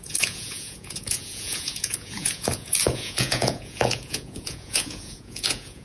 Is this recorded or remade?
remade